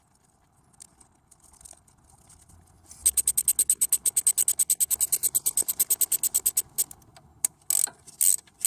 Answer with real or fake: real